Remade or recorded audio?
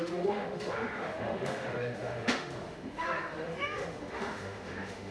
remade